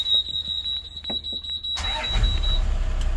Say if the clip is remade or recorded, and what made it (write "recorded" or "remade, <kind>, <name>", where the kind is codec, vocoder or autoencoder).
recorded